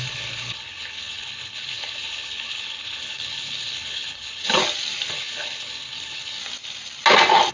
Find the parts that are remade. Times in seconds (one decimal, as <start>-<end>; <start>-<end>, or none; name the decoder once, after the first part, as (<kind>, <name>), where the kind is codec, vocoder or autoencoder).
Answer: 0.0-4.6 (codec, HILCodec); 5.1-6.4